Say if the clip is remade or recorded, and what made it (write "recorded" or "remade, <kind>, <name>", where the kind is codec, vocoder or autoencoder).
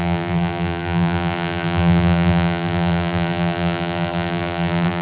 remade, vocoder, BigVGAN v2